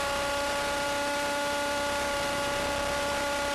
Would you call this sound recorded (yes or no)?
no